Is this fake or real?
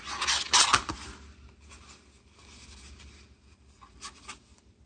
real